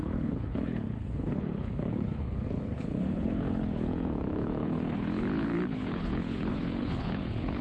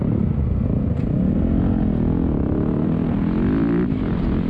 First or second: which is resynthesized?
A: first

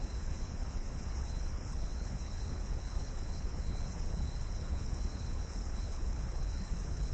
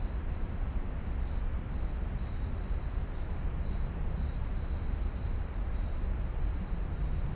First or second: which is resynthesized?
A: first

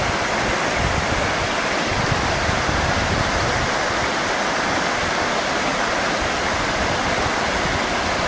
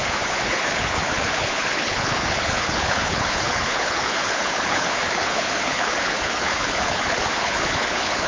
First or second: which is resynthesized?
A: second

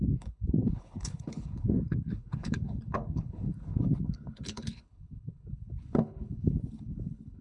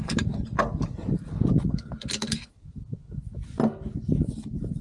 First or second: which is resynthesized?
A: first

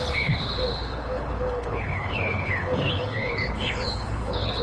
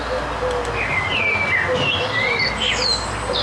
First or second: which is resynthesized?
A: first